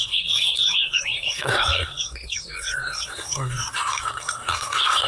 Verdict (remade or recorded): remade